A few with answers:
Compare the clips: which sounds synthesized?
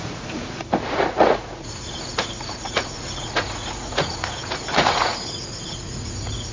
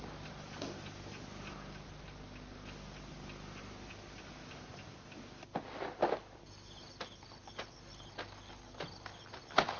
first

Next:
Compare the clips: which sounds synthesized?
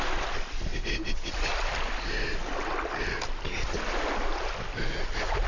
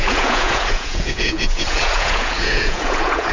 second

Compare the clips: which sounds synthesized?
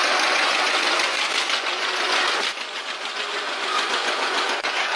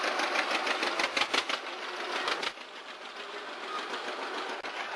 first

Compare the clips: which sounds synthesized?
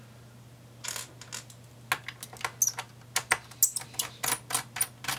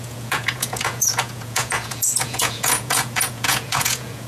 second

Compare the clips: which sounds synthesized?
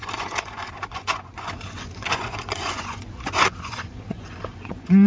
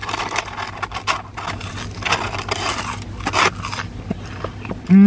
first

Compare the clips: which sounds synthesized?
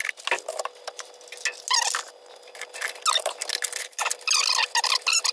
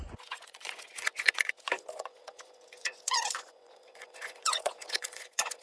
second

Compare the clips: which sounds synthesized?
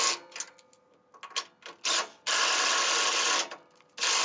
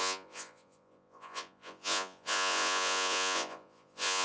second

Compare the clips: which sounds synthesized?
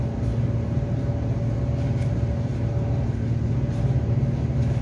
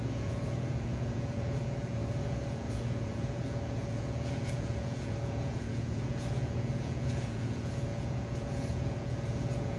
second